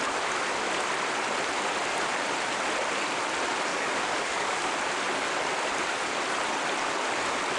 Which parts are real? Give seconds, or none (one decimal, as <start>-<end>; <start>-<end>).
0.0-3.7; 4.7-7.6

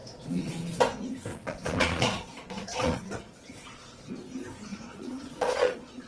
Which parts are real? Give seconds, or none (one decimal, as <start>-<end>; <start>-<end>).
0.8-1.3; 4.1-4.7